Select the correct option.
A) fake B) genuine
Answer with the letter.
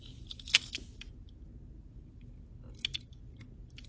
B